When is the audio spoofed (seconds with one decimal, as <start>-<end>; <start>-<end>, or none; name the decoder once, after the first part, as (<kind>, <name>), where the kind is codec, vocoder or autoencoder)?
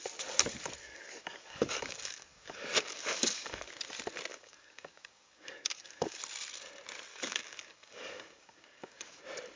0.8-3.7 (codec, DAC); 4.3-6.2; 7.1-9.2